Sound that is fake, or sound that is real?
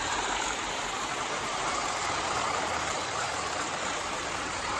fake